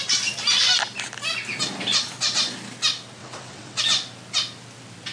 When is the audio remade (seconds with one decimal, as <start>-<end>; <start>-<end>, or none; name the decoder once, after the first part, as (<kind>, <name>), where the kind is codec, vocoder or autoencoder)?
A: 3.2-3.8 (vocoder, WaveNeXt)